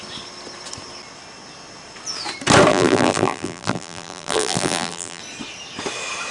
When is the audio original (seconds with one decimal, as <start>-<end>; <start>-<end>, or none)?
0.0-2.7; 5.2-6.3